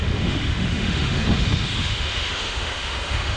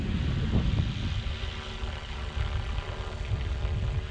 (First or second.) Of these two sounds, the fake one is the first